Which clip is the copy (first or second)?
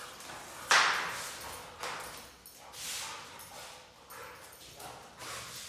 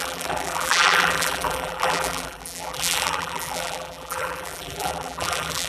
second